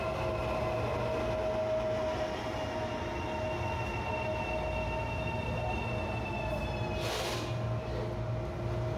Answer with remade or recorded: recorded